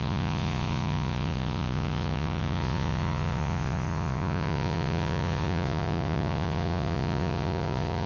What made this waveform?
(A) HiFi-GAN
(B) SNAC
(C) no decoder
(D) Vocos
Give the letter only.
D